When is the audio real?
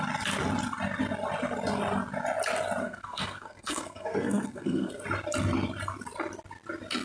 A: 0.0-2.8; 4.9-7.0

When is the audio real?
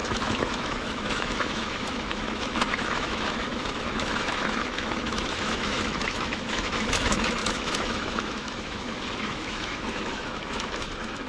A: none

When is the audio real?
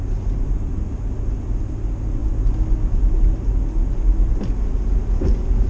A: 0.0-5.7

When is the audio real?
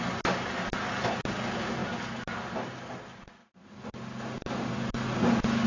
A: 0.0-5.7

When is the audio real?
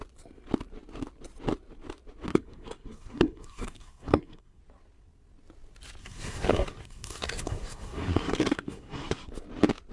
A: 0.0-2.3; 4.6-6.0; 9.3-9.9